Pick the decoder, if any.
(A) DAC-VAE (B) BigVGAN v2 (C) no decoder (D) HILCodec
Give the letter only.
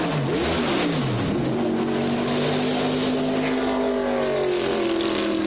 C